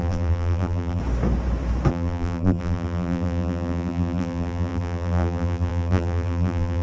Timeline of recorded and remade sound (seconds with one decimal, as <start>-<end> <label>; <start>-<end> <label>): 0.0-1.0 remade; 1.0-1.9 recorded; 1.9-6.8 remade